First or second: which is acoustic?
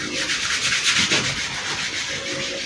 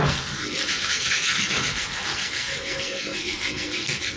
first